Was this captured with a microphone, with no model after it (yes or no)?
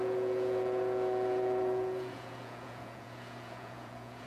no